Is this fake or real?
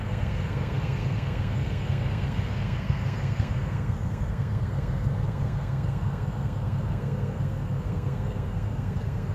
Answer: fake